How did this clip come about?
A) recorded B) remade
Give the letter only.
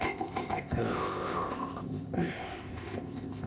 B